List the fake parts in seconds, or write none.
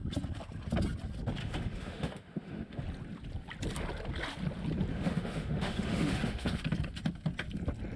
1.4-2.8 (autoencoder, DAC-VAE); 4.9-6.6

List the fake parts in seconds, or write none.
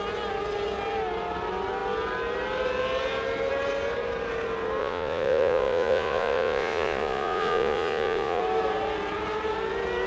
4.8-8.4 (vocoder, Vocos)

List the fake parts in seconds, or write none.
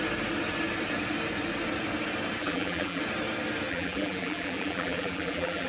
2.4-3.0 (vocoder, BigVGAN v2); 3.7-5.7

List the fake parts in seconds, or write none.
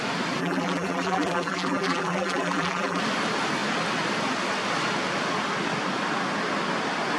0.4-3.0 (vocoder, BigVGAN v2)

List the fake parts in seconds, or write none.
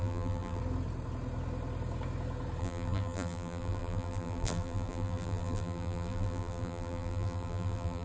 0.0-0.6 (vocoder, BigVGAN v2); 2.6-8.0